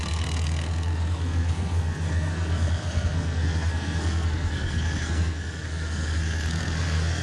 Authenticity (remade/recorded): remade